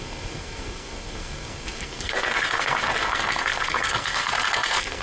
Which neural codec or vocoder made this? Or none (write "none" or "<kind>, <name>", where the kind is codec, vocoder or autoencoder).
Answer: codec, SNAC